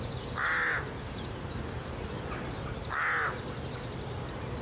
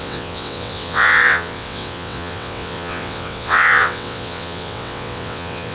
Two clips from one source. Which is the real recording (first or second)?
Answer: first